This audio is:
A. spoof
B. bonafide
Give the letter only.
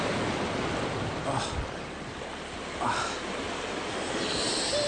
B